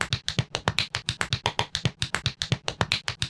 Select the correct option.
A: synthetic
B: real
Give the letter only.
B